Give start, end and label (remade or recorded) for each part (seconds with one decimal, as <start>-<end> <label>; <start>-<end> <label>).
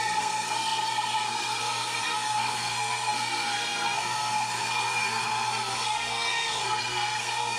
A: 0.0-7.6 remade